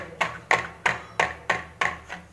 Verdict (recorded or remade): recorded